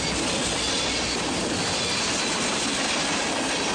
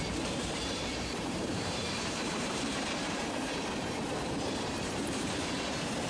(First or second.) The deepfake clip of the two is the second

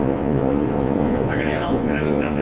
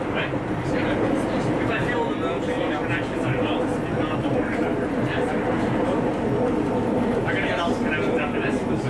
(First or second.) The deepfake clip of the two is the first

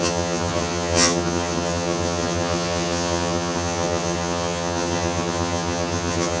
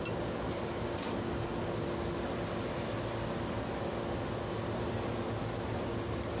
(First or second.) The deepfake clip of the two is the first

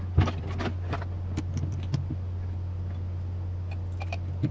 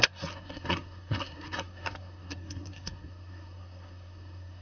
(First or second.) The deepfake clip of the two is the second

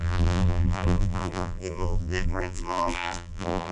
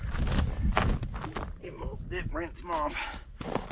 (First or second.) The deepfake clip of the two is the first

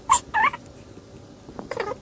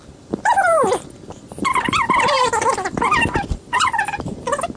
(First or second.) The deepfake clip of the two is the second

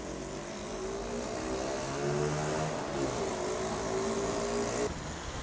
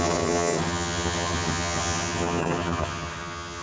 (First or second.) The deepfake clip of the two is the second